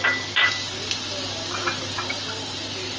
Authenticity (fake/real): real